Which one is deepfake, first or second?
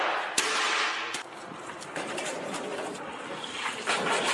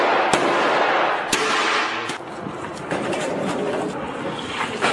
first